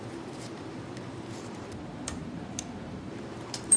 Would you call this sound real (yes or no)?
no